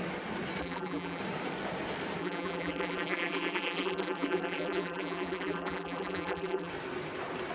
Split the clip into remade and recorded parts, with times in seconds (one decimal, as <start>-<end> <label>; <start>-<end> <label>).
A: 0.0-0.6 recorded; 0.6-1.2 remade; 1.2-2.2 recorded; 2.2-6.7 remade; 6.7-7.5 recorded